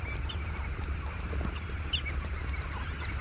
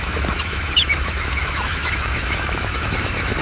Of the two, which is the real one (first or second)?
first